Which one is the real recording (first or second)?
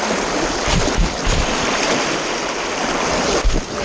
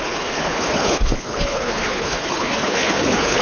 first